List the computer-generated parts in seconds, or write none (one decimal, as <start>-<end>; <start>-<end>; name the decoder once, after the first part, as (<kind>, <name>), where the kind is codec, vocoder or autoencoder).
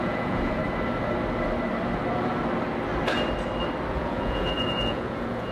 0.0-0.6 (vocoder, Vocos); 3.9-5.5